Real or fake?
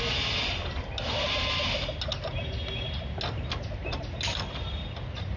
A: real